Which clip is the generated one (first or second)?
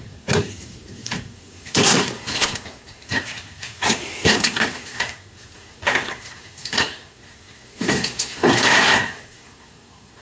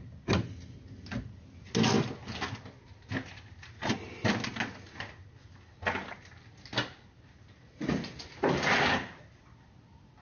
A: first